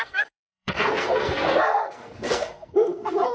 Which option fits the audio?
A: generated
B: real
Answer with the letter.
A